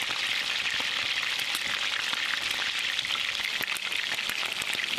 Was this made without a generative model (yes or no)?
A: yes